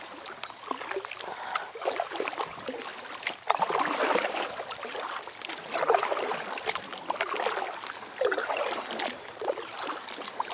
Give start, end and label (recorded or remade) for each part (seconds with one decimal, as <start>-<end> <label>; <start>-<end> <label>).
0.0-10.5 recorded